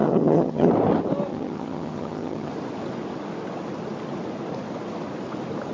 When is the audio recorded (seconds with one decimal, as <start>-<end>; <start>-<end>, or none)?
0.7-1.3; 2.5-5.7